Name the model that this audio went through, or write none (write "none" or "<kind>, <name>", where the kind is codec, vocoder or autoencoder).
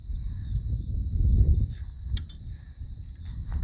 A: none